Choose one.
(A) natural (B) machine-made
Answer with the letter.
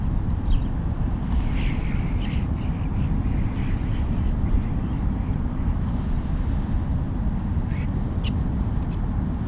A